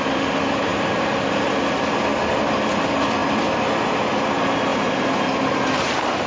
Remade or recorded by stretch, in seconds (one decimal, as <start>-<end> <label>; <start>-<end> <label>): 0.0-6.3 recorded